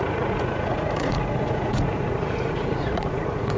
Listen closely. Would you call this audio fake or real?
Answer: fake